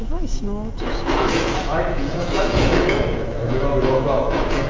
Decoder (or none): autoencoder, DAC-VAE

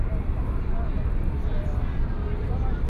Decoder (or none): none